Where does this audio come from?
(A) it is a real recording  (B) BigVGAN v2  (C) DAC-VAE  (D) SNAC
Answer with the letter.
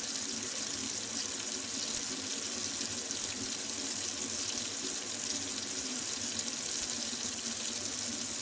A